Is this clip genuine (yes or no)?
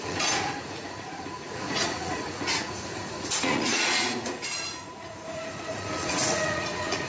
no